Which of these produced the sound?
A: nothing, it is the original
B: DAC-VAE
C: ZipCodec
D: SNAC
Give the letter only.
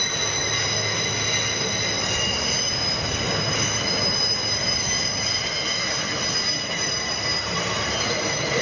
A